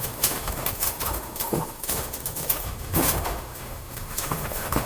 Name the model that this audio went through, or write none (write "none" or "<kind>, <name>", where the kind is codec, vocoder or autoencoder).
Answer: autoencoder, DAC-VAE